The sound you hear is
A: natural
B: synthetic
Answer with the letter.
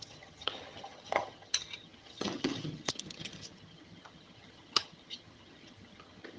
B